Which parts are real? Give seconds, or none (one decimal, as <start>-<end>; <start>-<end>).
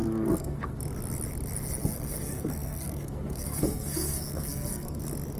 0.8-1.8; 5.0-5.4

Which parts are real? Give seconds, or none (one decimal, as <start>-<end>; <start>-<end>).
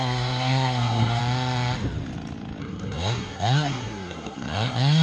1.2-2.6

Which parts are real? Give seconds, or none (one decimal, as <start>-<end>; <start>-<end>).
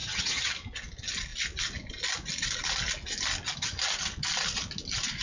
0.5-5.2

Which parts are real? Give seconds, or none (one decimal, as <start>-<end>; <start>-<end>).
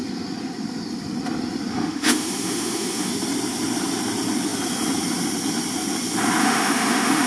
0.0-1.7; 3.1-6.4